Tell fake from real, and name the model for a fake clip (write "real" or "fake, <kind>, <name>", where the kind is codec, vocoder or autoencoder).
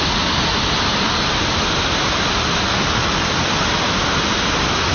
real